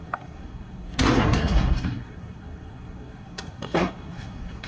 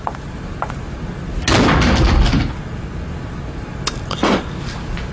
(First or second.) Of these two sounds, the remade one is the first